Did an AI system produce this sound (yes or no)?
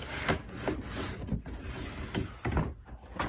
no